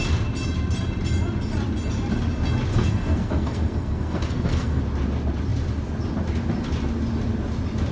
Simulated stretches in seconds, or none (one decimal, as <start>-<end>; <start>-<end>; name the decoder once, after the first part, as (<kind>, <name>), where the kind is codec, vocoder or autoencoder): 2.7-4.8 (codec, SNAC)